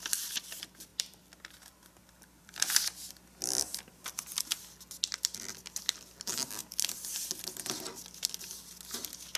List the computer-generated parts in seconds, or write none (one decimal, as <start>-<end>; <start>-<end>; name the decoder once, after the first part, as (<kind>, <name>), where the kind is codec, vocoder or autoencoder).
0.9-3.1 (vocoder, BigVGAN v2)